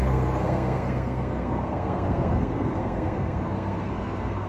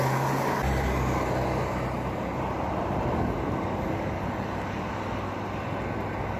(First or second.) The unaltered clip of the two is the second